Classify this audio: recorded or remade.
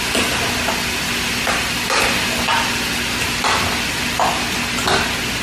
recorded